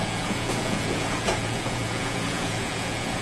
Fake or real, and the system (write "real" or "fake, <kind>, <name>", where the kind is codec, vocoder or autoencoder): fake, vocoder, Vocos